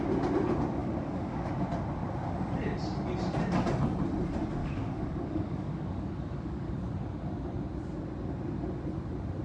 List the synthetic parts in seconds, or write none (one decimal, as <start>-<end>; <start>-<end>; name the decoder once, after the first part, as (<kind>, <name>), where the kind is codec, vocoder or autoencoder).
0.8-1.5 (codec, DAC); 4.6-6.7